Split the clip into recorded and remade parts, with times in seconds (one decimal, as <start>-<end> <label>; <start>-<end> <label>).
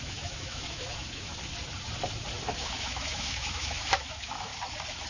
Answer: 0.0-1.3 remade; 1.3-2.5 recorded; 2.5-4.5 remade; 4.5-5.1 recorded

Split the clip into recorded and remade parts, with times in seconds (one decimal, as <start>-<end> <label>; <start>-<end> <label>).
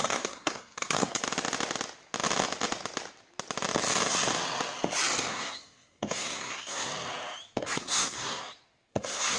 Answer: 0.0-1.2 remade; 1.2-5.3 recorded; 5.3-6.9 remade; 6.9-7.6 recorded; 7.6-8.4 remade; 8.4-8.9 recorded; 8.9-9.4 remade